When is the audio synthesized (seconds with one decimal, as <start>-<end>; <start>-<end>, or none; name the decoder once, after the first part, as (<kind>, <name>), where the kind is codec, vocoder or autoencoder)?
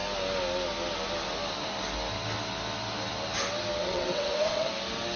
3.8-4.7 (vocoder, WaveNeXt)